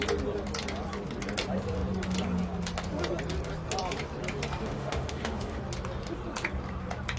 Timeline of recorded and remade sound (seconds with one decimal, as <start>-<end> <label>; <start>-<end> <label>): 0.0-4.6 recorded; 4.6-5.6 remade; 5.6-7.2 recorded